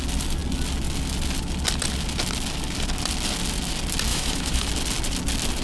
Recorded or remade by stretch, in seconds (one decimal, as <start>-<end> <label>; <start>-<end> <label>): 0.0-4.1 recorded; 4.1-4.7 remade; 4.7-5.6 recorded